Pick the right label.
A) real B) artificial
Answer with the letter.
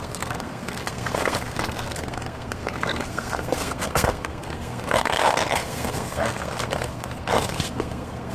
B